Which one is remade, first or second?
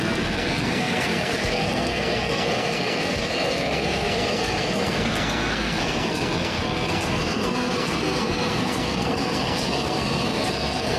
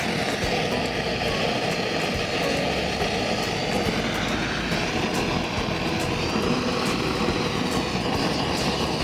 first